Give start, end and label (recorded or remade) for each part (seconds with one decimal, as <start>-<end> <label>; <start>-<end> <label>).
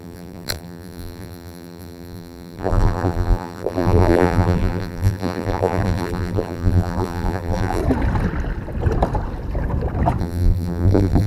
0.0-7.8 remade; 7.8-10.2 recorded; 10.2-11.3 remade